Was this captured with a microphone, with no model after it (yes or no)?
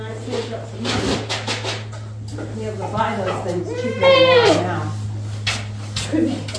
yes